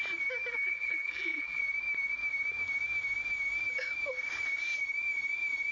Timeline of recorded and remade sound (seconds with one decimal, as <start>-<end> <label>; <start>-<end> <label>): 0.0-0.5 recorded; 0.5-1.6 remade; 1.6-5.7 recorded